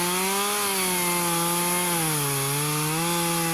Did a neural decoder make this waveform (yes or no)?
no